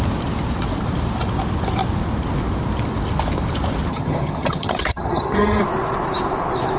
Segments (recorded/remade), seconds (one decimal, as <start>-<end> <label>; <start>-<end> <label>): 0.0-3.9 recorded; 3.9-5.6 remade; 5.6-6.8 recorded